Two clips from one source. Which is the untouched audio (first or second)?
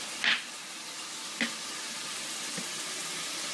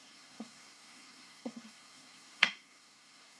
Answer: first